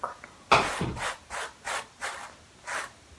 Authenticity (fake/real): real